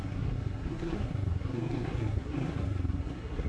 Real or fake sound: fake